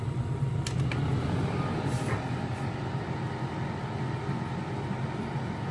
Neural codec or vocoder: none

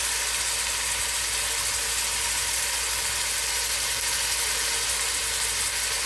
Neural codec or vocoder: none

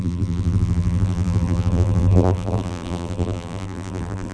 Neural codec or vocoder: vocoder, BigVGAN v2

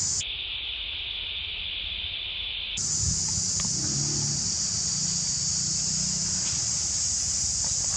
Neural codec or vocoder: none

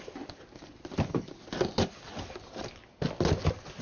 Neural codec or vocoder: none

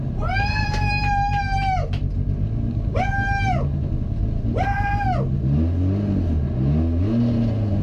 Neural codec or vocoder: none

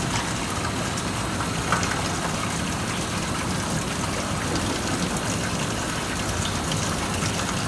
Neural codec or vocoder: none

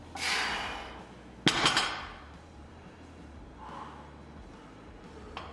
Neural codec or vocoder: none